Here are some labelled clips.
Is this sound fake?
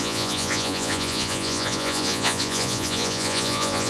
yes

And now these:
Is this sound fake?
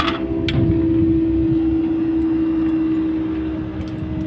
no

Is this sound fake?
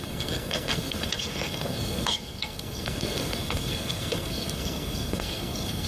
yes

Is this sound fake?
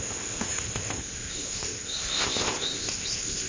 yes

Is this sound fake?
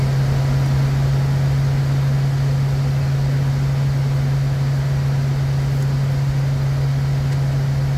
no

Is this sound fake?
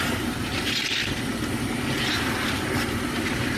yes